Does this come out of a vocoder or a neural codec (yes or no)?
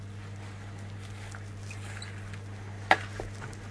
no